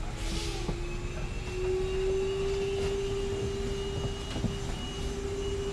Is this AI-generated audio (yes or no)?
no